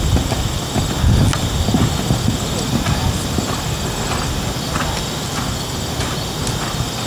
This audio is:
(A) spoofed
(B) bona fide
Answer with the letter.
B